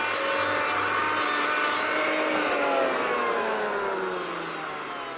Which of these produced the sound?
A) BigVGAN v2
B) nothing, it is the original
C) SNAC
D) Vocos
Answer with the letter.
B